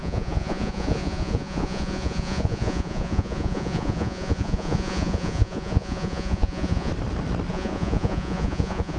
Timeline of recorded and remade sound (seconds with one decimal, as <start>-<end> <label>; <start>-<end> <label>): 0.0-6.9 remade; 6.9-7.5 recorded; 7.5-9.0 remade